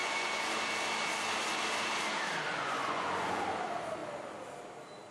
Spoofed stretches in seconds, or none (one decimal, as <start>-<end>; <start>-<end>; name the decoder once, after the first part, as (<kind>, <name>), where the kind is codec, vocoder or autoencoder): 0.0-0.5 (vocoder, Vocos); 2.5-3.4